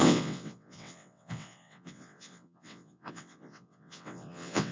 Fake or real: fake